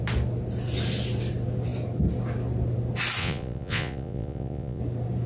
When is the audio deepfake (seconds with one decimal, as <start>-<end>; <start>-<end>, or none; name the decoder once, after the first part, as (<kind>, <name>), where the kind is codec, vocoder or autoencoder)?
3.2-4.8 (vocoder, Vocos)